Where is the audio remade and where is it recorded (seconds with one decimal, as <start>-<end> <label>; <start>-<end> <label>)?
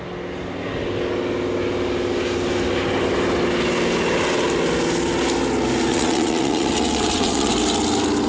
0.0-5.9 recorded; 5.9-7.5 remade; 7.5-8.3 recorded